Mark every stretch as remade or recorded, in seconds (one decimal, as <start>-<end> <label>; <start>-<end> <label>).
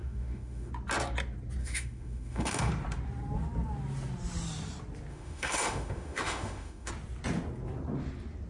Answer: 0.0-0.7 remade; 0.7-1.6 recorded; 1.6-2.7 remade; 2.7-5.1 recorded; 5.1-6.9 remade; 6.9-8.5 recorded